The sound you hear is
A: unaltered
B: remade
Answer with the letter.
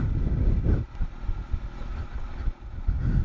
A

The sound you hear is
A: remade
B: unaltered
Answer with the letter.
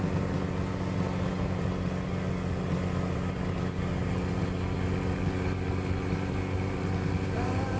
B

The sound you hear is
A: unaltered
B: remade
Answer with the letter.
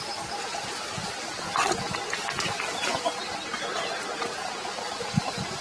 A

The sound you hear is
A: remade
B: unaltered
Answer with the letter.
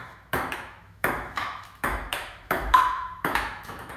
A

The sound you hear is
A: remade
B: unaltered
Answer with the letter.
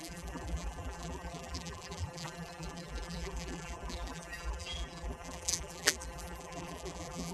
A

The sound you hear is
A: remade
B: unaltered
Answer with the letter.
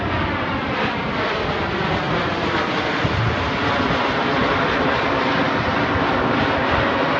B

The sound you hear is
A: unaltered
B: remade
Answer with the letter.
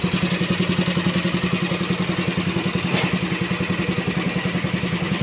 A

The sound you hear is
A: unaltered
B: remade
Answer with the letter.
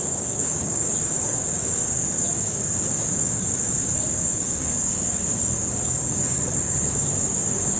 B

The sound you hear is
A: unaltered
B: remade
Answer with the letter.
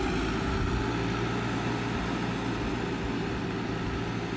A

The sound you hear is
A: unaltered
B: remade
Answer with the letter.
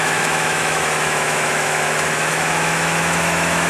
B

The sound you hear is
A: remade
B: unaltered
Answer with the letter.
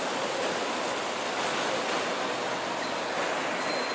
B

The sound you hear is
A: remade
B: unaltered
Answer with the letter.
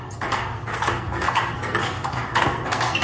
A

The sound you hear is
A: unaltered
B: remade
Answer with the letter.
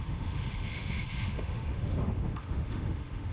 B